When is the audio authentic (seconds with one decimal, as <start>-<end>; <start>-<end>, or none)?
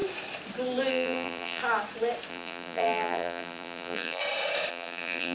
0.0-0.9; 1.6-2.3; 4.2-4.7